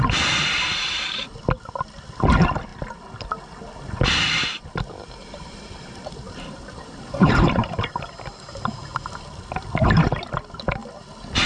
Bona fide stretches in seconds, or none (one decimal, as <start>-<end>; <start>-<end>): 0.0-5.2; 7.9-11.5